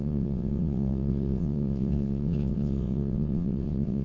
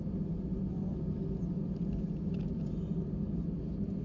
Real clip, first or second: second